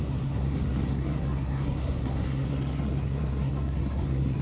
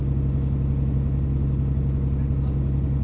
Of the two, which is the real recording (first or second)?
second